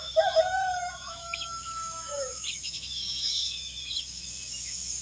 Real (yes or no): no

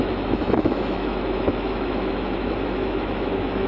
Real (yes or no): no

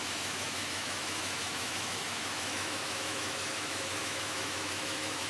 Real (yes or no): no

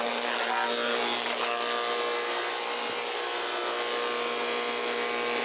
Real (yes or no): yes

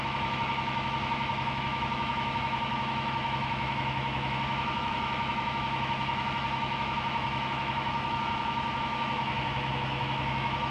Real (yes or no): no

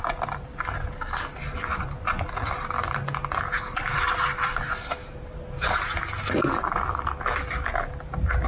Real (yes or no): yes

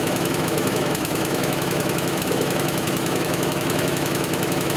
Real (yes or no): no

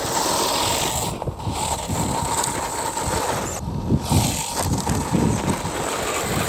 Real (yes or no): yes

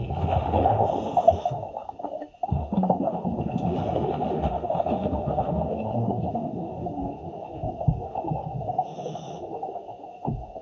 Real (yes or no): no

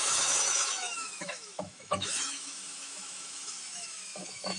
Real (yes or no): no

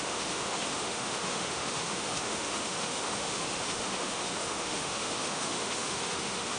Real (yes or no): no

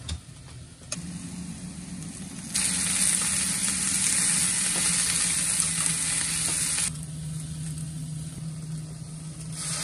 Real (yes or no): yes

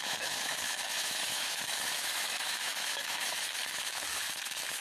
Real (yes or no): no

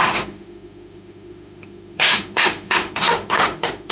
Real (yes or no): no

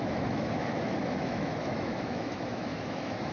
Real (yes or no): no